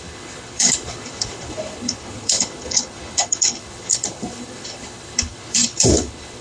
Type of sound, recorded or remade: remade